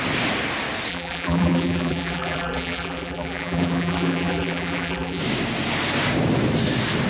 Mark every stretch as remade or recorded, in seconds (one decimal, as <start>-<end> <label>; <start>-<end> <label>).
0.0-0.9 recorded; 0.9-5.2 remade; 5.2-7.1 recorded